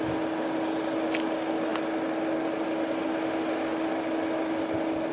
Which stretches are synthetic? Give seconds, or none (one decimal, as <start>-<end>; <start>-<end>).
none